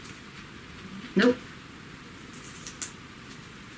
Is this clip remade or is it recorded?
recorded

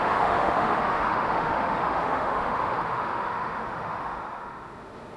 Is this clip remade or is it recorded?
remade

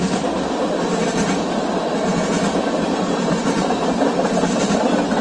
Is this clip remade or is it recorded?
recorded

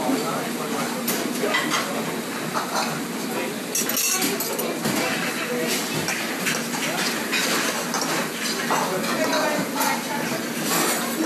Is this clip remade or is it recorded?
recorded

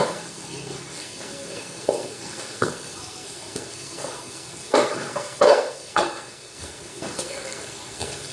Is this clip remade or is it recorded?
remade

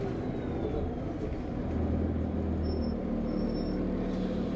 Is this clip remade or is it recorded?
recorded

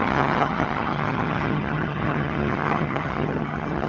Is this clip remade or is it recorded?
remade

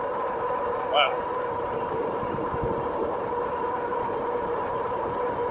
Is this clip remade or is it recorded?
remade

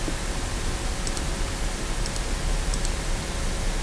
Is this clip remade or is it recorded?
recorded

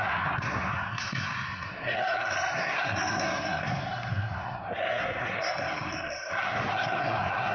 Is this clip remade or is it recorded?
remade